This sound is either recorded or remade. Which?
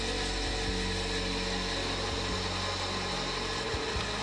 recorded